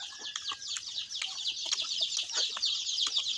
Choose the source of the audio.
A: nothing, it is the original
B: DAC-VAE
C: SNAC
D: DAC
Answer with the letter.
A